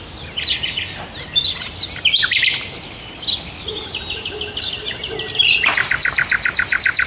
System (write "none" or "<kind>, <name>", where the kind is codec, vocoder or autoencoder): none